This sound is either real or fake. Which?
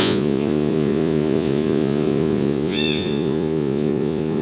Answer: fake